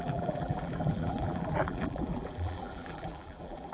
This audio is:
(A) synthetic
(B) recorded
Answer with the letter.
A